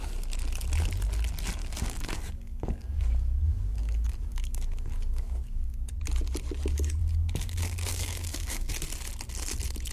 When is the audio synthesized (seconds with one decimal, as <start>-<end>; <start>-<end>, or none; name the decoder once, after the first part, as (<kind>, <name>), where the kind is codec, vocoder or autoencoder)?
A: 1.6-5.9 (codec, DAC); 7.0-8.7